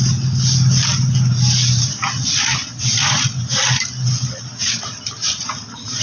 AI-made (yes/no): no